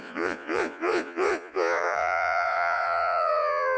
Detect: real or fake fake